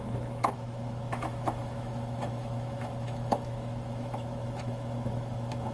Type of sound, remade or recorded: remade